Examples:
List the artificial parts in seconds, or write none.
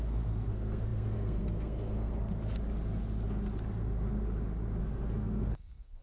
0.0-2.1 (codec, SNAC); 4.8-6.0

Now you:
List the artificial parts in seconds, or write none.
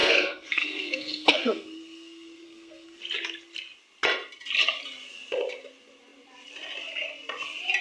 0.0-3.0 (codec, SNAC)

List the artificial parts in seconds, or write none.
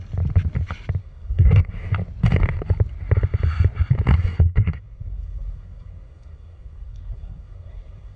1.0-1.7 (codec, SNAC); 4.1-8.2